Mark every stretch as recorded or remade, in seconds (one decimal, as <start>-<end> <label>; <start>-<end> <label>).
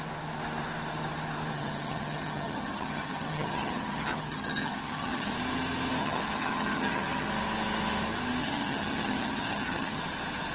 0.0-1.5 recorded; 1.5-5.3 remade; 5.3-6.0 recorded; 6.0-7.3 remade; 7.3-8.4 recorded; 8.4-10.0 remade; 10.0-10.5 recorded